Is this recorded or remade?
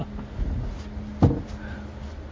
recorded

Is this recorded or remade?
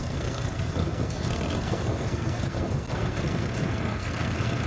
remade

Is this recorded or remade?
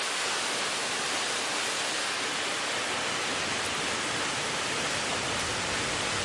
recorded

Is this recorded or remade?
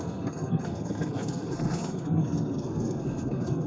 remade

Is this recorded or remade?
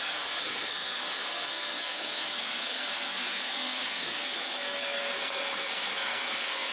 remade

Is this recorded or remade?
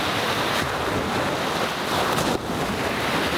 recorded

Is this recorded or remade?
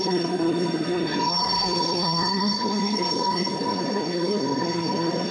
remade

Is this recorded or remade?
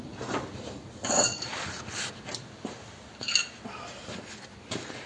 recorded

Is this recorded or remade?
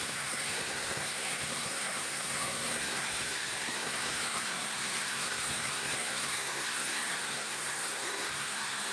remade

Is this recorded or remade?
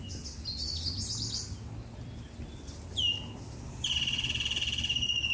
recorded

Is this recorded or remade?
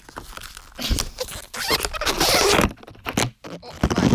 recorded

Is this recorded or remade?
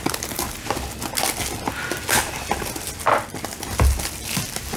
recorded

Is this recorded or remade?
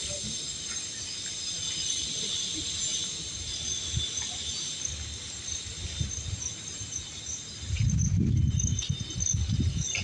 recorded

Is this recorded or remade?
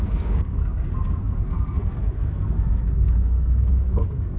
remade